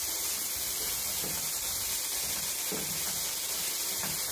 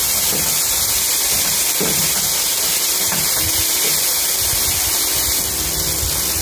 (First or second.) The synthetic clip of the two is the second